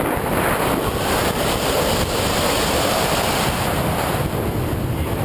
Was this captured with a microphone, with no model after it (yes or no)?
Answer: no